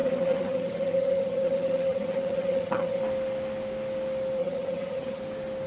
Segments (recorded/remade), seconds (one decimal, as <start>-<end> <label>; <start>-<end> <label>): 0.0-3.0 remade; 3.0-4.4 recorded; 4.4-5.2 remade; 5.2-5.7 recorded